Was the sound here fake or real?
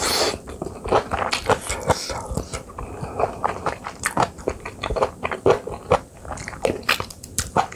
fake